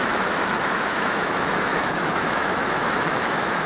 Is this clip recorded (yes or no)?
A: no